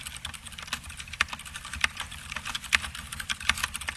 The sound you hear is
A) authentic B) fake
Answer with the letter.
A